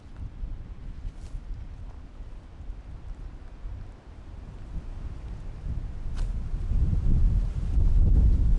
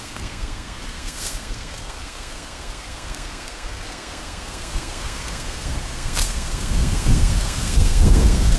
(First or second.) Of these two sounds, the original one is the first